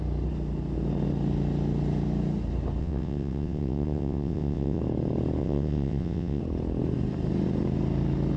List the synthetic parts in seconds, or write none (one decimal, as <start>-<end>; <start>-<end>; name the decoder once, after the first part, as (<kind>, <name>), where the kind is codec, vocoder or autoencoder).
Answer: 2.8-4.8 (vocoder, WaveNeXt); 5.4-6.4